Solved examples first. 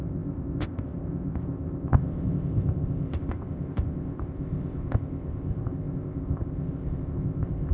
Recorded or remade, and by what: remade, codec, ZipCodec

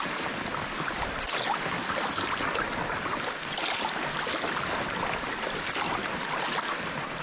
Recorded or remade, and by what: recorded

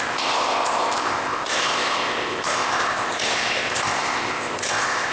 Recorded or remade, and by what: remade, codec, ZipCodec